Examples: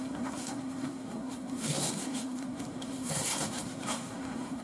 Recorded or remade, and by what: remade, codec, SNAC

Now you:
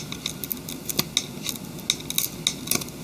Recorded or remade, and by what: recorded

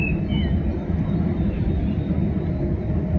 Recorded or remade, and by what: recorded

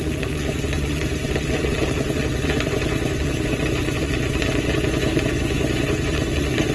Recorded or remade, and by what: remade, vocoder, Vocos